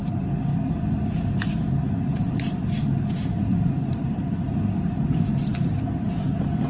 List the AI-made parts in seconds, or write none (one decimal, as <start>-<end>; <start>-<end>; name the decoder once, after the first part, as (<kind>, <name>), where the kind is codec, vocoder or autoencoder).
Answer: 1.7-6.7 (vocoder, BigVGAN v2)